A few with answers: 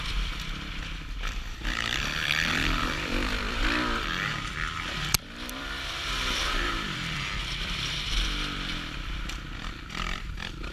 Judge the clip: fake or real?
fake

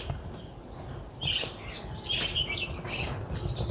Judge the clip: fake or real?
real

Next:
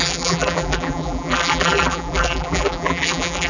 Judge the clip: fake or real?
fake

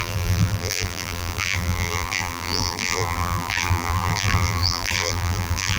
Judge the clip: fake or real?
fake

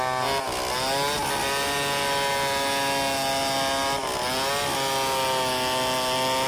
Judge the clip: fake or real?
real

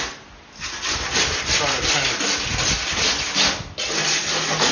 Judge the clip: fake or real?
real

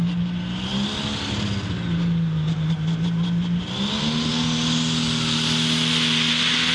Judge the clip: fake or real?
real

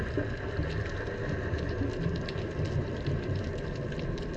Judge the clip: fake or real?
real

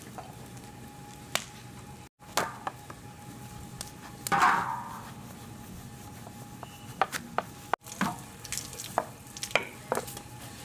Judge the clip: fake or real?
real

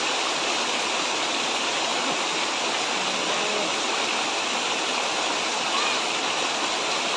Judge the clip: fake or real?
real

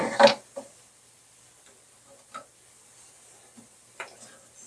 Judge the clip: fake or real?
fake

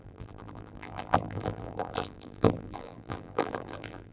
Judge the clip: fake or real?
fake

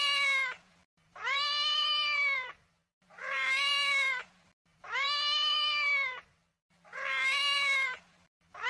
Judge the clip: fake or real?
fake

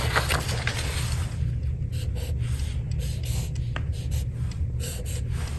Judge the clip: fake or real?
real